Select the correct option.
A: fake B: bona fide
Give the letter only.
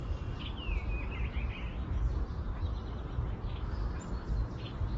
B